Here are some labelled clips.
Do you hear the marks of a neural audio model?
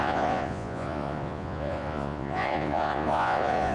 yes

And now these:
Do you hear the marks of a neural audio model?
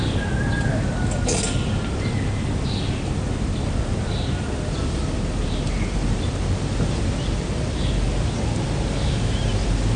no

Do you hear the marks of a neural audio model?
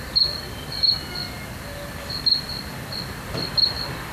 yes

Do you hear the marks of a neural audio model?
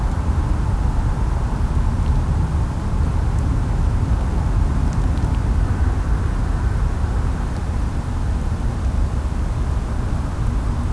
no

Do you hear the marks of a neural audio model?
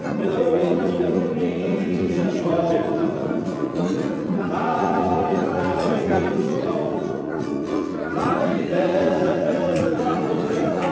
yes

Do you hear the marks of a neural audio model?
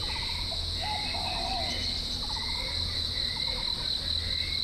no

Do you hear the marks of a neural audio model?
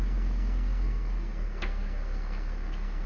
yes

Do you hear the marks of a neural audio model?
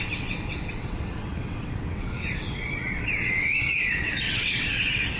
yes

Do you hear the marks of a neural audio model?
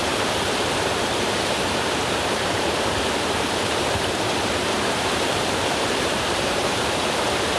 yes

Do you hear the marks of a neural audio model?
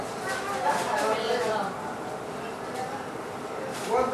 no